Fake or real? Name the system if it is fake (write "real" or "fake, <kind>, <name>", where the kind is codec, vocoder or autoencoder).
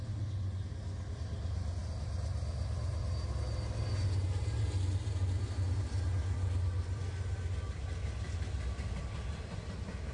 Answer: real